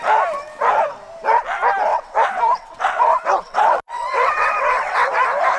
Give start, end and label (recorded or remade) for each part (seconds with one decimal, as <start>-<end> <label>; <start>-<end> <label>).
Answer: 0.0-1.9 recorded; 1.9-5.1 remade; 5.1-5.6 recorded